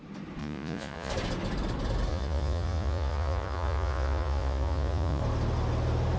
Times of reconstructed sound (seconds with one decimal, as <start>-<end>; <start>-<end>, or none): 0.4-1.1; 2.1-5.2